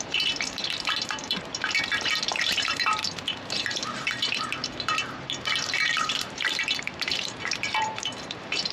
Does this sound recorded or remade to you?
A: remade